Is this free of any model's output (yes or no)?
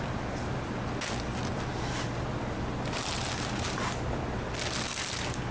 yes